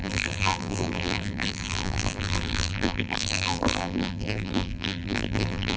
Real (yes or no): no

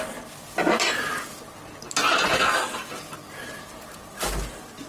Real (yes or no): yes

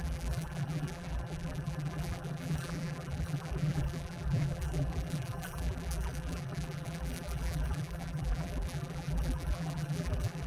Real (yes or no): no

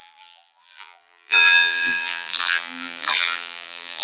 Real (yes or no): no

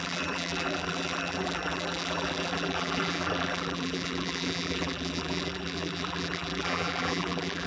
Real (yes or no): no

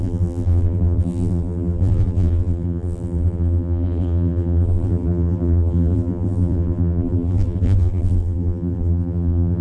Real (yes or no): no